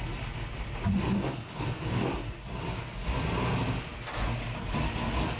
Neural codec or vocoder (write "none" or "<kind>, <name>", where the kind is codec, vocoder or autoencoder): none